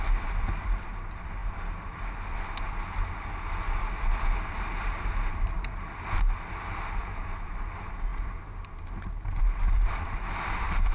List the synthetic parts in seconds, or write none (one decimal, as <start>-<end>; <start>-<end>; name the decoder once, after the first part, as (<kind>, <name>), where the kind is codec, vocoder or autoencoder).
none